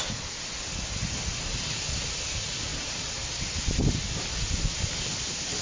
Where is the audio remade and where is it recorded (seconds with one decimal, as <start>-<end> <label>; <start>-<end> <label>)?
0.0-5.6 recorded